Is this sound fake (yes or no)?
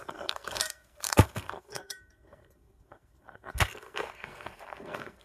yes